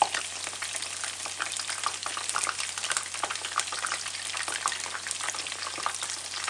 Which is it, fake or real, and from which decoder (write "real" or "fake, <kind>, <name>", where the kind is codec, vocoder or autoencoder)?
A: real